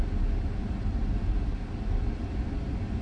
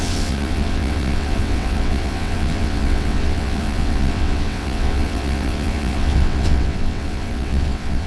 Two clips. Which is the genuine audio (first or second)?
first